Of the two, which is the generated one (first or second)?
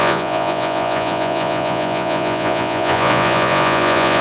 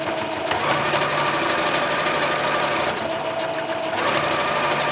first